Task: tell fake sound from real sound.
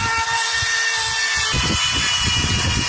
fake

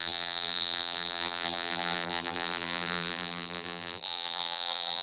fake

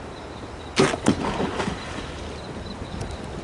real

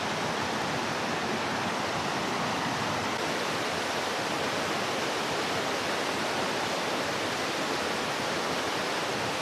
real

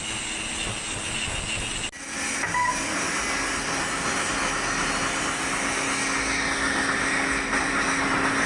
real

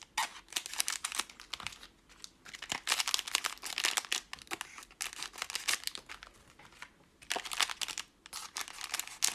real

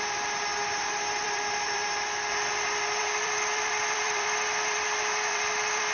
fake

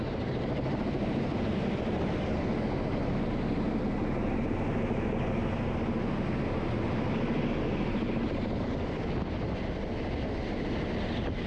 real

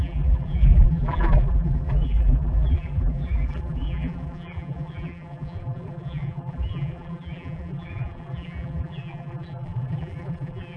fake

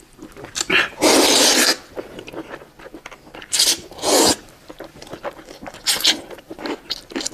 real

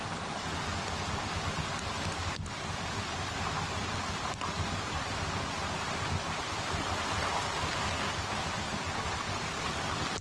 real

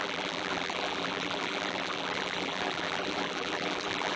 fake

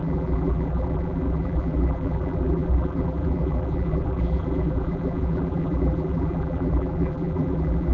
fake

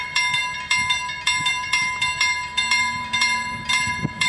fake